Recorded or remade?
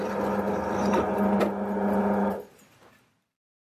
recorded